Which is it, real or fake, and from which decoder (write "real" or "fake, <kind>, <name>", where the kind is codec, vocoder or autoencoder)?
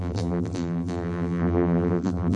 fake, vocoder, BigVGAN v2